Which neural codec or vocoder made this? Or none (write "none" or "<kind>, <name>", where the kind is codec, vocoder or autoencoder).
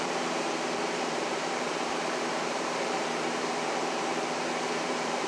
vocoder, BigVGAN v2